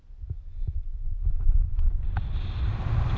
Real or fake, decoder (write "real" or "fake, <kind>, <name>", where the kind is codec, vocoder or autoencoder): real